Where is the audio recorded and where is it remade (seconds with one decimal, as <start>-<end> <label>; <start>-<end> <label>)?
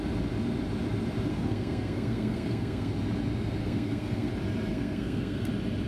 0.0-1.3 recorded; 1.3-2.9 remade; 2.9-3.6 recorded; 3.6-4.3 remade; 4.3-4.7 recorded; 4.7-5.5 remade; 5.5-5.9 recorded